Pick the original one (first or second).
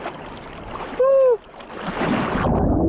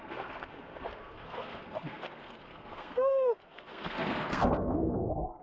first